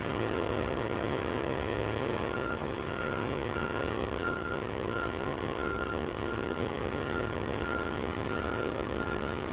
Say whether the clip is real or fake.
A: fake